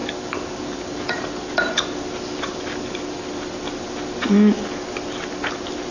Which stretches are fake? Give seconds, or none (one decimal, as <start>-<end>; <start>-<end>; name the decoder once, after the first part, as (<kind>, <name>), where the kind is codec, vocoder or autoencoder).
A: none